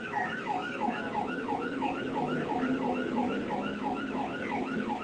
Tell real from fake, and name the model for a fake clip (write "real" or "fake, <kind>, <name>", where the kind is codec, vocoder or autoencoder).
fake, autoencoder, DAC-VAE